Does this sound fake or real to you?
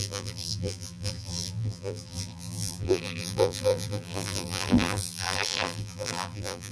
fake